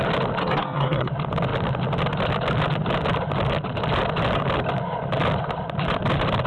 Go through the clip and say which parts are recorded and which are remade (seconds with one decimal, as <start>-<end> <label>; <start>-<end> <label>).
0.0-0.4 recorded; 0.4-1.1 remade; 1.1-6.5 recorded

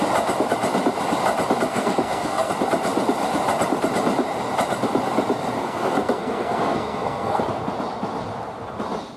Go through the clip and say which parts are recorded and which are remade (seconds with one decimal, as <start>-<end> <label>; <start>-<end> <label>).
0.0-1.7 recorded; 1.7-2.5 remade; 2.5-5.6 recorded; 5.6-7.4 remade; 7.4-9.2 recorded

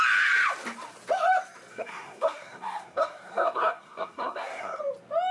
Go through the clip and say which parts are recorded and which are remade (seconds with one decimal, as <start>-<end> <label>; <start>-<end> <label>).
0.0-1.7 recorded; 1.7-4.8 remade; 4.8-5.3 recorded

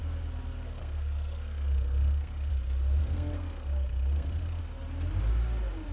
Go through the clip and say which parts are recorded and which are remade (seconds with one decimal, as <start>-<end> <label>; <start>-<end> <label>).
0.0-0.8 recorded; 0.8-2.5 remade; 2.5-3.0 recorded; 3.0-4.6 remade; 4.6-5.9 recorded

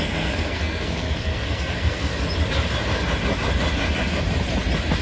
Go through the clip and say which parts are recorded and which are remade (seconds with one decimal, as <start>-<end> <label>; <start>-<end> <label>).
0.0-2.1 remade; 2.1-5.0 recorded

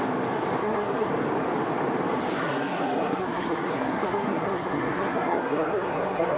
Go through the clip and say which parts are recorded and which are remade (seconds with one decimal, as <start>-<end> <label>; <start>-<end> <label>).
0.0-0.6 recorded; 0.6-1.1 remade; 1.1-2.3 recorded; 2.3-6.4 remade